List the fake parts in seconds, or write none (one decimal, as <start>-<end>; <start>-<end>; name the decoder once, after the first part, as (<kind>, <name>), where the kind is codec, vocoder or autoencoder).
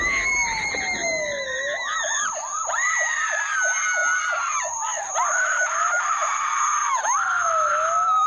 none